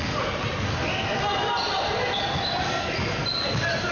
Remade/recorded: recorded